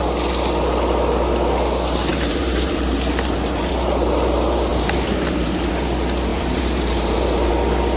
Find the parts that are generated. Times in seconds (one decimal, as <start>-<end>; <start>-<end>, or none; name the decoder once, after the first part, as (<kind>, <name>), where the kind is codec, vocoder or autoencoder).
2.1-3.7 (vocoder, BigVGAN v2); 4.7-5.7; 6.3-7.5